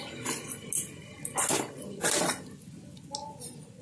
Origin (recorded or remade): recorded